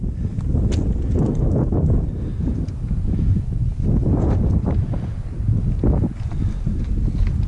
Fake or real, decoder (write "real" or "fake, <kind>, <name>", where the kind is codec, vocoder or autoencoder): real